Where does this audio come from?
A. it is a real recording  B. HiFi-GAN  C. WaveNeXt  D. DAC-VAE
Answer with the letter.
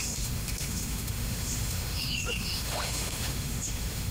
D